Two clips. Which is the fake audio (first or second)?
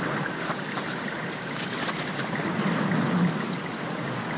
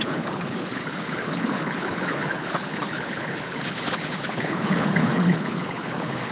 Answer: second